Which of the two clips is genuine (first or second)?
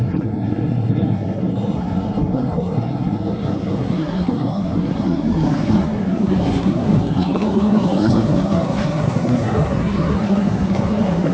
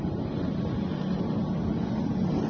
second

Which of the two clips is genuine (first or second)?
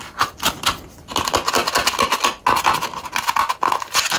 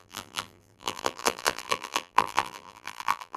first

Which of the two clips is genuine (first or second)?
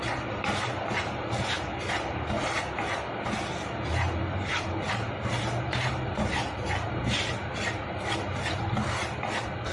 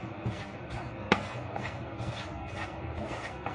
first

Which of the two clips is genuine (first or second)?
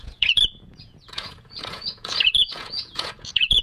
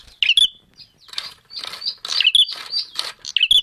second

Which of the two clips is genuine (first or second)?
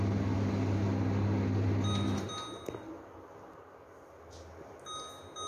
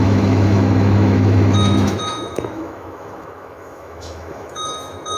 first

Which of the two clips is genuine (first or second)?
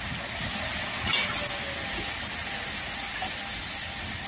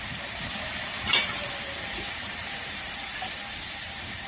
first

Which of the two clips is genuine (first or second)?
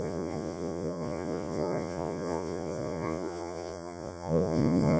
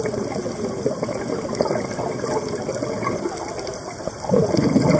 second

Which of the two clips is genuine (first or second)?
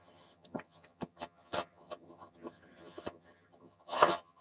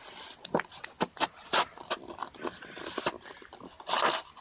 second